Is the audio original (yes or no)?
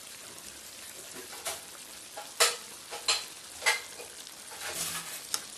yes